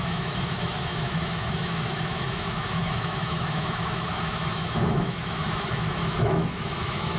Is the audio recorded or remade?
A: remade